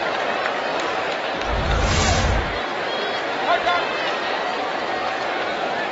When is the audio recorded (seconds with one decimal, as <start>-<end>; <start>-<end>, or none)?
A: 0.0-0.7; 1.2-2.7; 3.9-5.9